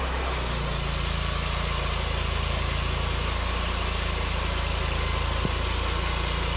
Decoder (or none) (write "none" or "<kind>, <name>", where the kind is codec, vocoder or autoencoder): none